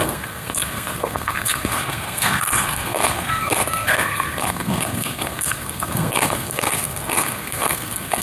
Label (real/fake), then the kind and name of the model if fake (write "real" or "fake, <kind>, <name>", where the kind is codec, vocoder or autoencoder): fake, codec, SNAC